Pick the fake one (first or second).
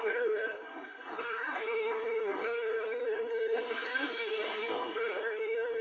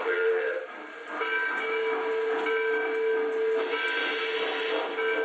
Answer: first